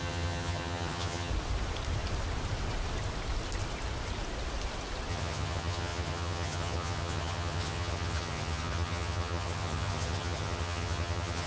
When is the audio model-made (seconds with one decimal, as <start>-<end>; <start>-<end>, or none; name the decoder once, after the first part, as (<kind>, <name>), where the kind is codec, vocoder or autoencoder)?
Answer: 0.0-1.3 (vocoder, HiFi-GAN); 5.1-11.5